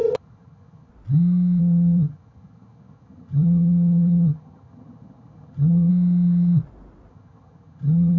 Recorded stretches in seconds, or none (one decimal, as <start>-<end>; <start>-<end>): 0.9-1.6; 5.9-7.1